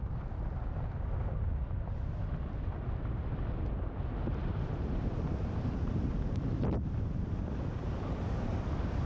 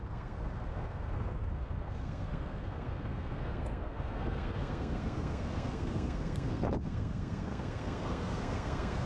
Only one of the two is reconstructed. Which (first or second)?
second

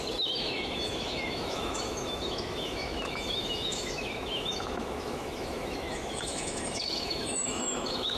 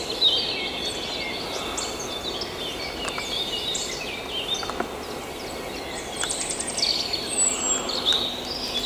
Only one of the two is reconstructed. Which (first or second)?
first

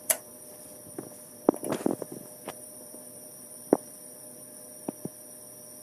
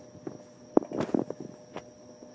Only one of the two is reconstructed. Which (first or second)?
first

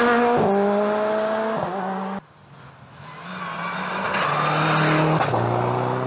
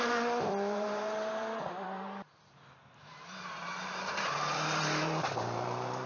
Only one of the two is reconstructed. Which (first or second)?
second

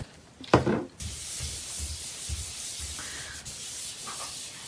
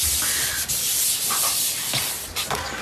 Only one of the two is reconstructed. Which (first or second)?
first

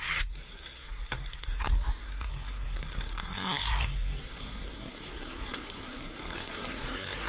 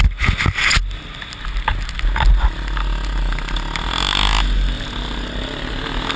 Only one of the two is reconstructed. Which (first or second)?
first